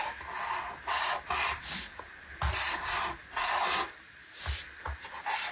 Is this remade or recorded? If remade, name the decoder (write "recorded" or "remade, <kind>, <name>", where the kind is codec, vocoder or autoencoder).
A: recorded